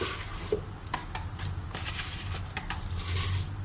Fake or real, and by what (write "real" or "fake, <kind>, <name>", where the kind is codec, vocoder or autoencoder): real